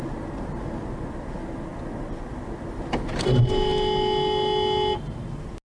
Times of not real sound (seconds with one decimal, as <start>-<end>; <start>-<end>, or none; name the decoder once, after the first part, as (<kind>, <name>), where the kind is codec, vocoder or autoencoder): none